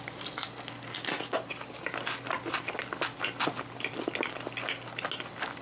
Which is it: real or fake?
real